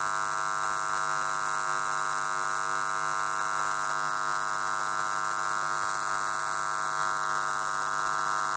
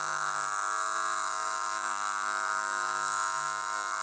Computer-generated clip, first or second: second